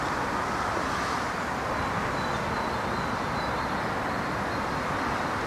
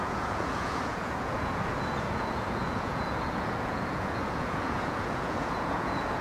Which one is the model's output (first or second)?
second